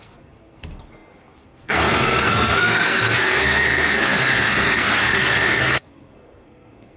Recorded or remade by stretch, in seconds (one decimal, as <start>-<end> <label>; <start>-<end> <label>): 0.0-7.0 remade